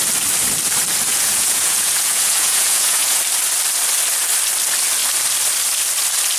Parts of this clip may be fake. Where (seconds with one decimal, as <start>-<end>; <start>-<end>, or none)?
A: 1.1-3.2